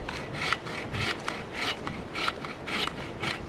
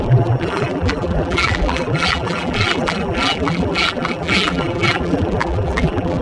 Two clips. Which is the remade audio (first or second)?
second